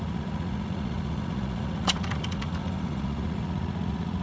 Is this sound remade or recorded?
remade